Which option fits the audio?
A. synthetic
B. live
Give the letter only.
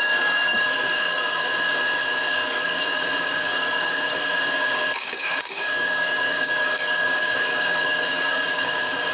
A